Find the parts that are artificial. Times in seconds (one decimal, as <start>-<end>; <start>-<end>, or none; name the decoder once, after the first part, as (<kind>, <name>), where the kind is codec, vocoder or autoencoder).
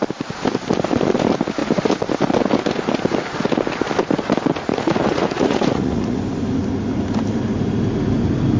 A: 4.7-6.2 (vocoder, Vocos)